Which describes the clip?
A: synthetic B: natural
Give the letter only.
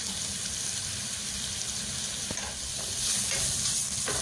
B